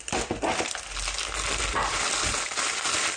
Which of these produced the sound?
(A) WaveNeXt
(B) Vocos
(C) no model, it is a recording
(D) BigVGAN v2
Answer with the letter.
C